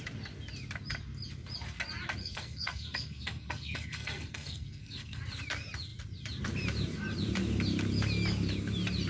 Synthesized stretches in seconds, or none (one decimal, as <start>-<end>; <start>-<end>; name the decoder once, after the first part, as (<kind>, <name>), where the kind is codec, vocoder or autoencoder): 2.2-5.2 (codec, SNAC)